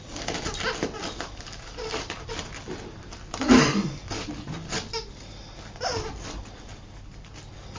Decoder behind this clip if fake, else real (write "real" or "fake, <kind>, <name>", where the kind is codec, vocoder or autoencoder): fake, vocoder, BigVGAN v2